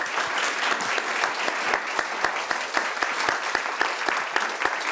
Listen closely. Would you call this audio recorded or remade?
recorded